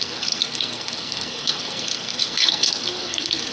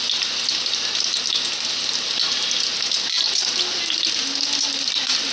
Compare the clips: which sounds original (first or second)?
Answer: second